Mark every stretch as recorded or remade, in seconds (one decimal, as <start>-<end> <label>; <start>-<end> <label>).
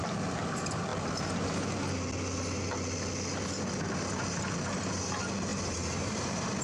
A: 0.0-5.5 recorded; 5.5-6.6 remade